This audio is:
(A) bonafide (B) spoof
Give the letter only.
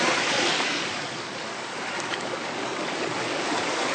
B